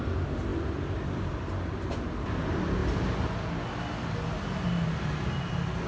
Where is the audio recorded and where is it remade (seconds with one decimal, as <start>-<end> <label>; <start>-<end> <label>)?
0.0-5.9 recorded